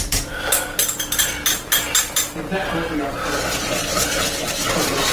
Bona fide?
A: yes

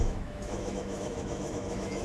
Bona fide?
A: no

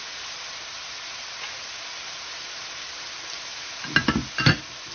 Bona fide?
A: yes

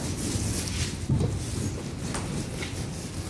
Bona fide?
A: yes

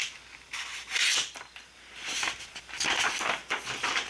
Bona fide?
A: yes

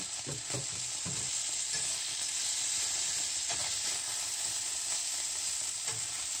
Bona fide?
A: yes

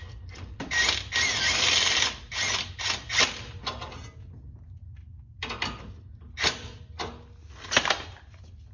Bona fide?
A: yes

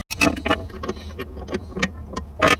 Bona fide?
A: yes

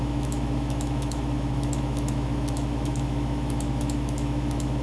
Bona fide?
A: no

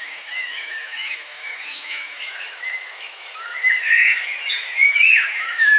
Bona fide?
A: no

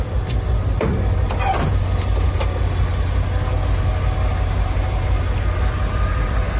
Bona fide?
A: yes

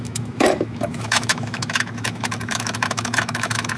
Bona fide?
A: no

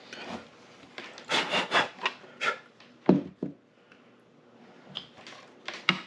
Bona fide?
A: yes